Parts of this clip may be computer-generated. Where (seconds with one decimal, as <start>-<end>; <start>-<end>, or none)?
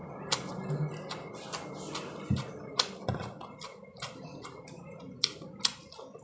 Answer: none